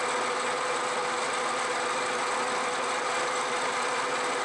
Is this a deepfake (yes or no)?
no